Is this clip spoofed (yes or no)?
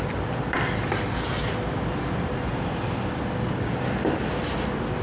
no